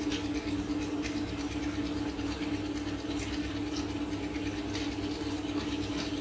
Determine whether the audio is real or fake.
real